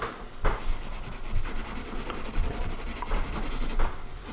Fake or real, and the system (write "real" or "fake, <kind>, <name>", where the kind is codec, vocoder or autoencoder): real